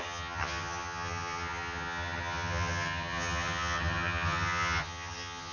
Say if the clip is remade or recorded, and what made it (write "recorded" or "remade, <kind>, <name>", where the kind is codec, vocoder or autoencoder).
remade, vocoder, HiFi-GAN